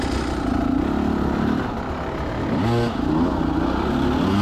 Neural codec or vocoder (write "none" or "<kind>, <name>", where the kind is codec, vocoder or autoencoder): none